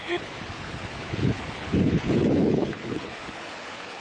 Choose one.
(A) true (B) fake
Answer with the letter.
B